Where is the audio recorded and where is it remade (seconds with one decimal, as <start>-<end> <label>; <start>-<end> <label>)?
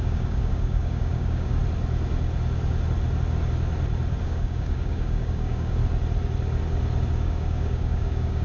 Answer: 0.0-1.6 remade; 1.6-4.2 recorded; 4.2-5.8 remade; 5.8-7.1 recorded; 7.1-8.4 remade